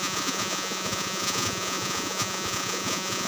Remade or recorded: remade